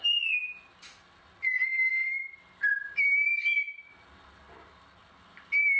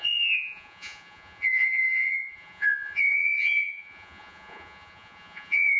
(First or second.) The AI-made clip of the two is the second